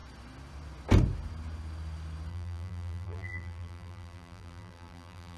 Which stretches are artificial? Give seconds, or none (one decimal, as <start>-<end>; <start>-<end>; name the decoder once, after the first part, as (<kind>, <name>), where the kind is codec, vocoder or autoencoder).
2.3-5.4 (vocoder, BigVGAN v2)